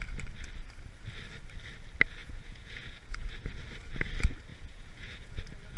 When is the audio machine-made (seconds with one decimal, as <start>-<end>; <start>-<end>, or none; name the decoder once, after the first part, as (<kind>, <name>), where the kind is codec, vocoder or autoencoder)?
2.2-3.3 (vocoder, Vocos); 4.5-5.3